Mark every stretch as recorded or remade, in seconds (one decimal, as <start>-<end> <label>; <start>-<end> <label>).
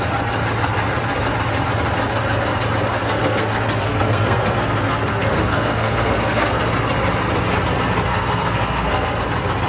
0.0-2.9 recorded; 2.9-6.7 remade; 6.7-8.1 recorded; 8.1-9.2 remade; 9.2-9.7 recorded